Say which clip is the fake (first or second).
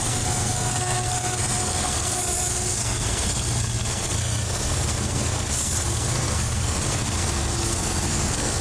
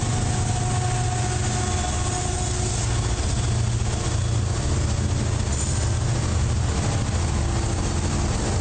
first